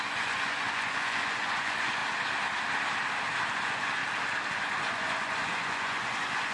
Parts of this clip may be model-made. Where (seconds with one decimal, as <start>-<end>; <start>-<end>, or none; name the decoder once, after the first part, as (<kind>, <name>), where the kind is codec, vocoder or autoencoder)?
0.0-2.0 (vocoder, Vocos); 3.5-4.0; 4.5-6.5